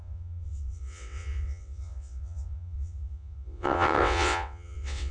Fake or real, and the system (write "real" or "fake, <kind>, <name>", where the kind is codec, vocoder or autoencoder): fake, vocoder, WaveNeXt